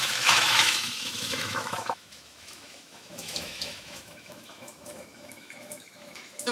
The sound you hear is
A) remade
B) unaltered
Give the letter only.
A